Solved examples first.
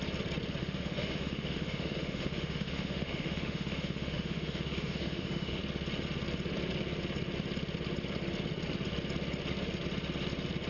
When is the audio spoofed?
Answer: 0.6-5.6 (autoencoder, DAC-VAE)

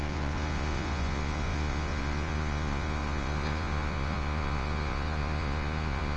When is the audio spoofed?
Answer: 0.0-6.2 (vocoder, Vocos)

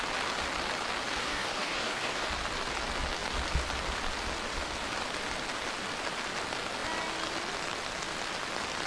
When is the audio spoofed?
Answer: 1.2-2.3 (codec, DAC)

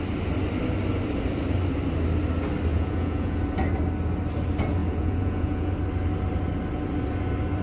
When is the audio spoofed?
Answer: 2.7-3.4 (vocoder, Vocos); 4.8-5.7

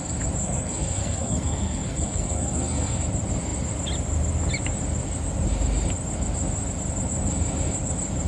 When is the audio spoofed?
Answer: 0.4-3.0 (codec, SNAC)

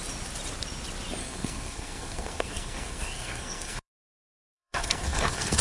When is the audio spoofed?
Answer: 1.2-3.9 (codec, SNAC); 4.4-5.6

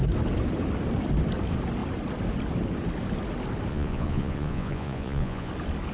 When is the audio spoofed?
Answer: 3.7-5.5 (vocoder, Vocos)